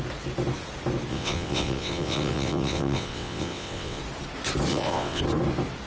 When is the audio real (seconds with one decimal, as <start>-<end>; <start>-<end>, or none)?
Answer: 0.0-1.1; 4.0-4.7; 5.2-5.9